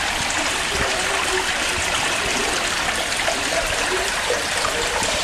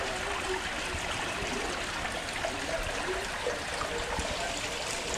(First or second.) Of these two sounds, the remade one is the first